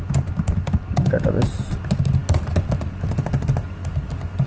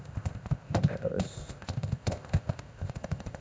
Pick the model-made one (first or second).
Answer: second